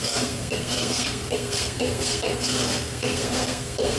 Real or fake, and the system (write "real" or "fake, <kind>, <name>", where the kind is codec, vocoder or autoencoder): fake, codec, SNAC